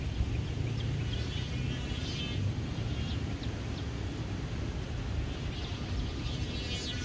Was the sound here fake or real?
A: real